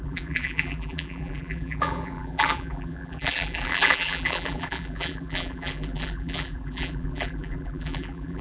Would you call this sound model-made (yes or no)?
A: yes